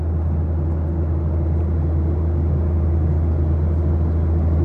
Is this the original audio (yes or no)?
yes